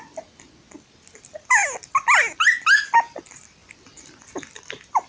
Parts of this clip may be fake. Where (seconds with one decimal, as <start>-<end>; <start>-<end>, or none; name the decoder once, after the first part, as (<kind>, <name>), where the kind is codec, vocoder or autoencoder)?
none